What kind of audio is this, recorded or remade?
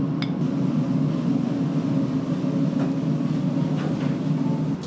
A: recorded